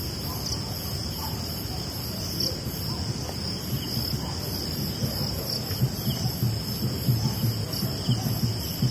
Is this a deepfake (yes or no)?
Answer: no